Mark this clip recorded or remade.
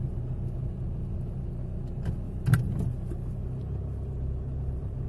recorded